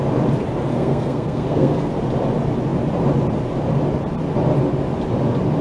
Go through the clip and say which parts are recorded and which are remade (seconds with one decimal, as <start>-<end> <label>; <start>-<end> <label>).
0.0-0.7 recorded; 0.7-1.9 remade; 1.9-5.6 recorded